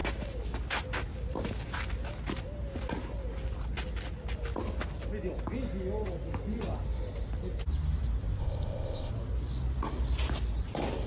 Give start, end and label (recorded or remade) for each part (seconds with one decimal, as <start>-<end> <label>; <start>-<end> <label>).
0.0-8.4 recorded; 8.4-9.1 remade; 9.1-11.1 recorded